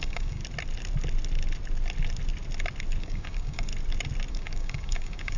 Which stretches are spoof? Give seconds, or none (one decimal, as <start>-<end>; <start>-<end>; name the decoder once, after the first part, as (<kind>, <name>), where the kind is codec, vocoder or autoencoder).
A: 0.0-0.4 (codec, DAC); 3.0-3.7; 4.3-5.4